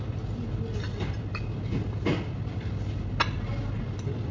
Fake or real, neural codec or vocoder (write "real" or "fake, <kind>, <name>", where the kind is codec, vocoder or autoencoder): real